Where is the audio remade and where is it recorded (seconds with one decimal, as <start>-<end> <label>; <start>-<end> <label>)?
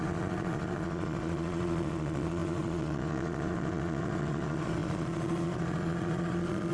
0.0-6.7 remade